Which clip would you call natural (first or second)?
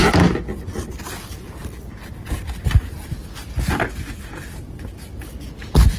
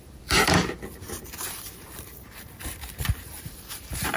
first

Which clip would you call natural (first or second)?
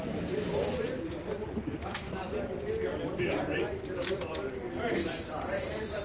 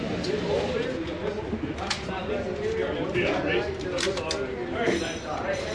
second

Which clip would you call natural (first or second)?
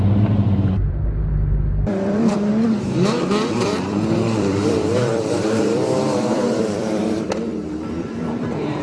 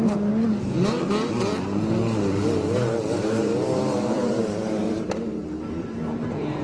second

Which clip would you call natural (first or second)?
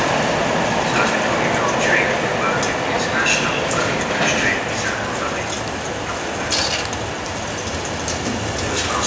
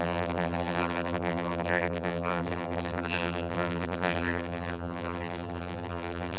first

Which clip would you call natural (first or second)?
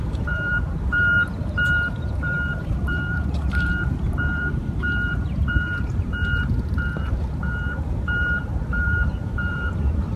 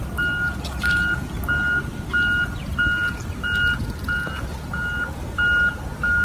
second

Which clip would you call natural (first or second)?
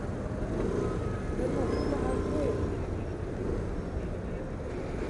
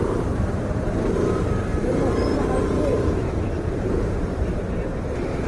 first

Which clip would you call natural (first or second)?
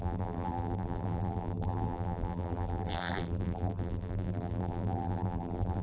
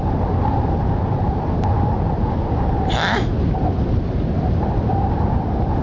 second